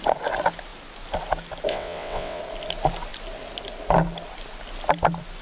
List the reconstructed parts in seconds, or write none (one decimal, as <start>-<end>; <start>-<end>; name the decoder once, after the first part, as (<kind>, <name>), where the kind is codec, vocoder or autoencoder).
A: 1.7-2.4 (vocoder, WaveNeXt)